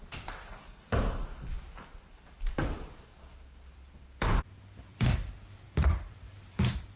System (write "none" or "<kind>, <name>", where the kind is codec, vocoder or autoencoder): vocoder, BigVGAN v2